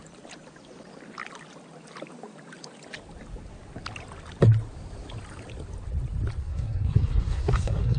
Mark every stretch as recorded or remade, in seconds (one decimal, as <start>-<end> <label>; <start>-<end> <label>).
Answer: 0.0-6.4 recorded; 6.4-8.0 remade